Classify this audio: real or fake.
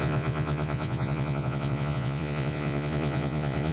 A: fake